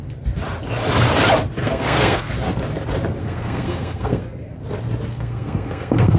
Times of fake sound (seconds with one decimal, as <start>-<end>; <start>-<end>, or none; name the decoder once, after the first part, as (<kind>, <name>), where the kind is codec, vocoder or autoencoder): 1.6-2.3 (codec, SNAC); 3.2-4.2; 5.1-6.2